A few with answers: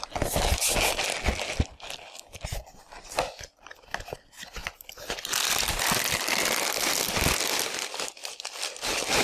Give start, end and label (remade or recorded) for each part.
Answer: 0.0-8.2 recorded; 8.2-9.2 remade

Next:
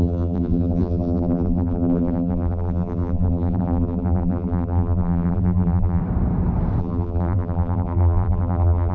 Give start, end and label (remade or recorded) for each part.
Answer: 0.0-6.0 remade; 6.0-6.8 recorded; 6.8-8.9 remade